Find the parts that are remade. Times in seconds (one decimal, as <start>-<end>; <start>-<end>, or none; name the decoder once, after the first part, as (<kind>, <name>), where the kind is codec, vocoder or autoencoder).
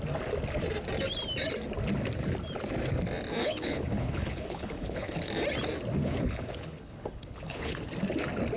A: 3.4-5.3 (codec, HILCodec); 6.0-7.8